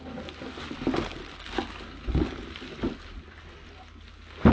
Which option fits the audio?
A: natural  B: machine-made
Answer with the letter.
A